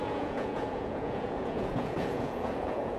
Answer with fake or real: fake